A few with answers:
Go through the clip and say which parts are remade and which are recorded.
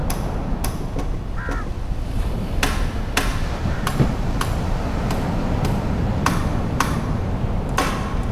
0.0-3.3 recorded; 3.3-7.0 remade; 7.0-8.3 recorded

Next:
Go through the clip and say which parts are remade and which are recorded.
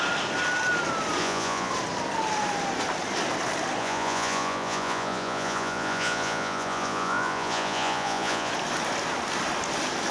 0.0-1.2 recorded; 1.2-1.7 remade; 1.7-3.8 recorded; 3.8-8.5 remade; 8.5-10.1 recorded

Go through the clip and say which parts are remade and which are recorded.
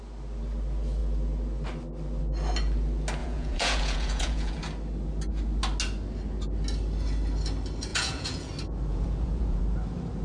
0.0-3.2 recorded; 3.2-4.6 remade; 4.6-7.9 recorded; 7.9-8.5 remade; 8.5-8.9 recorded; 8.9-9.6 remade; 9.6-10.2 recorded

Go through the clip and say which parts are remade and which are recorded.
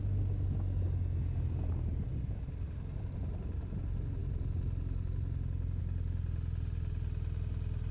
0.0-7.9 recorded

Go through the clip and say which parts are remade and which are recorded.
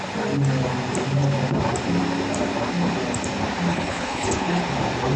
0.0-3.7 recorded; 3.7-4.6 remade; 4.6-5.2 recorded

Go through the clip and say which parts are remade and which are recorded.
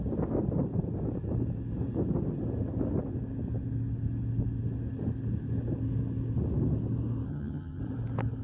0.0-7.3 recorded; 7.3-7.8 remade; 7.8-8.4 recorded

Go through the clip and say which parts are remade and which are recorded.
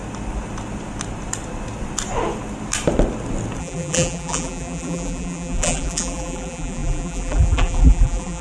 0.0-3.6 recorded; 3.6-8.4 remade